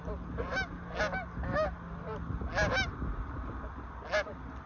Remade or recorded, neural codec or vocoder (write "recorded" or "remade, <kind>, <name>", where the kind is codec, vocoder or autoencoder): recorded